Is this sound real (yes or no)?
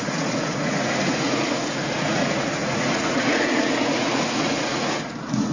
no